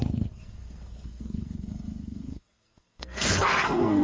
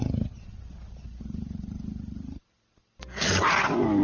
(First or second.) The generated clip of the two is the first